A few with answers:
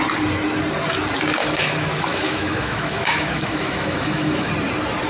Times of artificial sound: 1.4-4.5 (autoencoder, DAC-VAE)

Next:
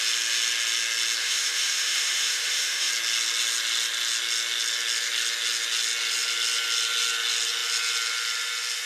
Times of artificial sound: 1.2-2.9 (autoencoder, DAC-VAE)

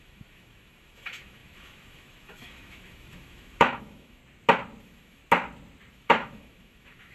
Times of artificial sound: 0.0-4.2 (autoencoder, DAC-VAE); 4.8-5.2; 5.9-7.1

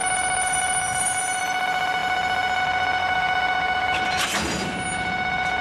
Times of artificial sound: 3.0-4.0 (autoencoder, DAC-VAE)

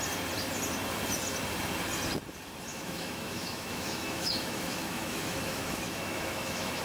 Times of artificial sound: 2.7-6.8 (autoencoder, DAC-VAE)

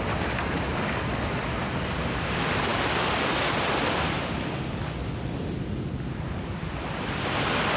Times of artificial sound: none